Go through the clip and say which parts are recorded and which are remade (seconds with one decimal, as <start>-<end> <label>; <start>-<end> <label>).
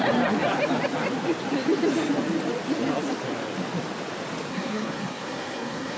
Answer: 0.0-4.5 recorded; 4.5-6.0 remade